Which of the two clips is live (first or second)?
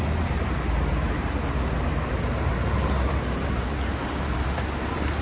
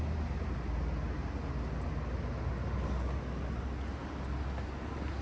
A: second